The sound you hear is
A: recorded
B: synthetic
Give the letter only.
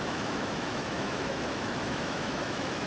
B